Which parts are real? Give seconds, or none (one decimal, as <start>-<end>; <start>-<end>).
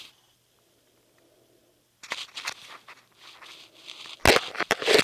1.6-4.4